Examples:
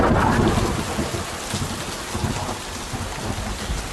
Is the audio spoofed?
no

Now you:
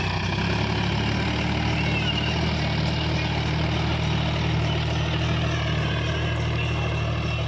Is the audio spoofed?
no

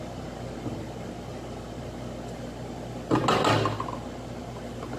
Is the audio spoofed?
no